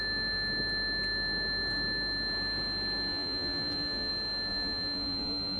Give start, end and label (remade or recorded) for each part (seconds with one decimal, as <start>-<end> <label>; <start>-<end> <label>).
0.0-3.1 recorded; 3.1-4.1 remade; 4.1-4.5 recorded; 4.5-5.6 remade